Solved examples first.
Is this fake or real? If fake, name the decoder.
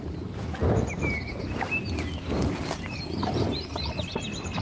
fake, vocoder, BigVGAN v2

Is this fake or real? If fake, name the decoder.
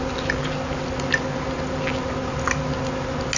real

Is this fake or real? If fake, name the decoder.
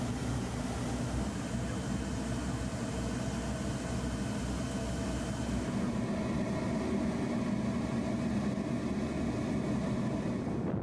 real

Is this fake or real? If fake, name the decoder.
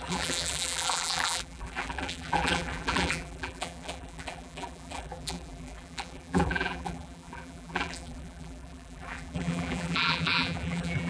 fake, vocoder, BigVGAN v2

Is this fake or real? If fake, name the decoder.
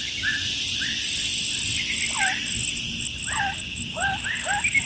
real